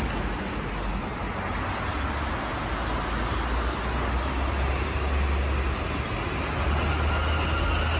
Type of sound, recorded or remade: recorded